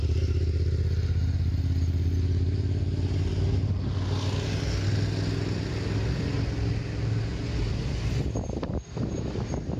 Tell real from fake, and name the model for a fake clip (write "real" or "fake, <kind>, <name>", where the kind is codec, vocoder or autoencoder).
real